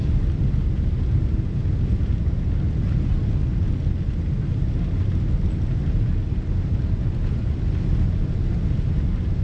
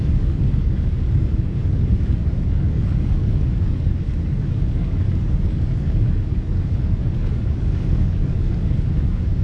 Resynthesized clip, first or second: second